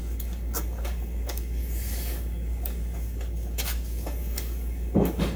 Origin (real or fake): fake